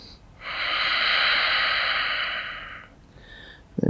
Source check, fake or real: real